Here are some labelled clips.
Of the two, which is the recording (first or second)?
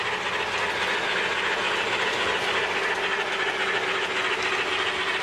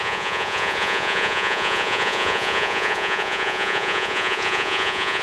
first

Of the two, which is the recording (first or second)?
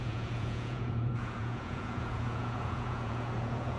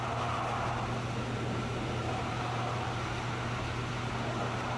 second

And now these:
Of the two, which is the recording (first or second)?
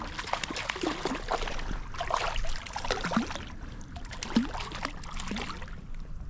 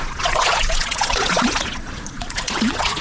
first